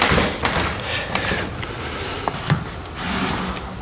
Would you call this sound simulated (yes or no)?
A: no